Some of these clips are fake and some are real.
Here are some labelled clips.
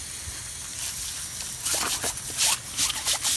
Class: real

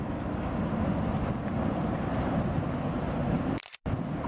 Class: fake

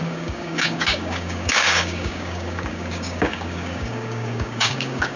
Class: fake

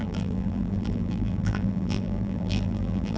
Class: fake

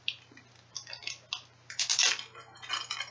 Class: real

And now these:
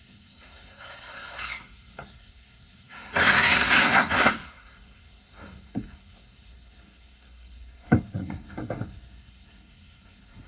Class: fake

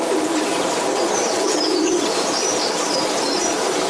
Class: fake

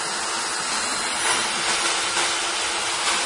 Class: real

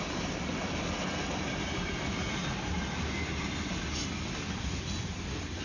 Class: real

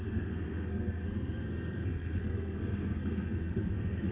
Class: fake